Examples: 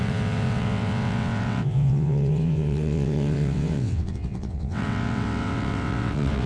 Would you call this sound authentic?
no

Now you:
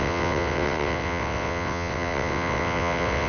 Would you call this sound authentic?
no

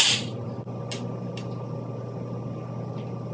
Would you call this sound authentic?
yes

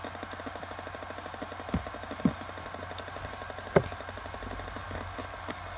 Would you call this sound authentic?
yes